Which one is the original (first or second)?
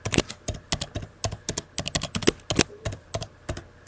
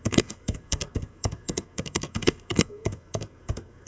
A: first